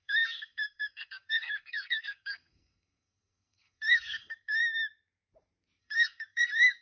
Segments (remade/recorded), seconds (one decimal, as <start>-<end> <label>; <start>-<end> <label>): 0.0-4.6 remade; 4.6-5.8 recorded; 5.8-6.8 remade